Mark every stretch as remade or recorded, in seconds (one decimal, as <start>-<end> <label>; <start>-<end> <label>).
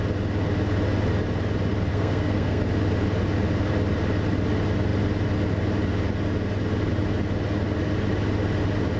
0.0-1.9 recorded; 1.9-2.6 remade; 2.6-9.0 recorded